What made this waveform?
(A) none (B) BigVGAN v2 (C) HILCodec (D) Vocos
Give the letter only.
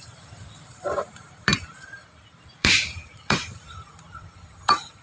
B